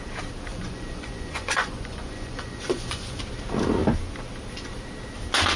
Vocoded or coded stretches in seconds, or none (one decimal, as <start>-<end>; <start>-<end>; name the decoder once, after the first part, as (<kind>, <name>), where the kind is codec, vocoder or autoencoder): 0.5-3.2 (vocoder, Vocos)

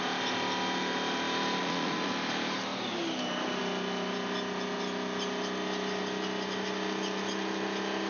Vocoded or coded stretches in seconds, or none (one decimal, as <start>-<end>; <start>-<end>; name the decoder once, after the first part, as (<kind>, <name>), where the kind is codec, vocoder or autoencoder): 1.6-2.1 (vocoder, Vocos)

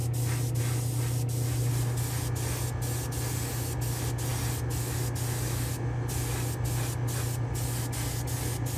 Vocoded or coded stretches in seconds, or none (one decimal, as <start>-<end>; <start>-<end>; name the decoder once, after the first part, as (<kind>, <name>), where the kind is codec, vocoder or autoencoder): none

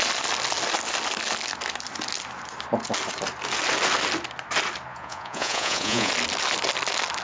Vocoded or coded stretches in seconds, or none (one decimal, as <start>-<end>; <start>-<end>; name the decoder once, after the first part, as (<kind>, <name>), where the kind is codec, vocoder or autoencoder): 4.9-6.1 (vocoder, Vocos)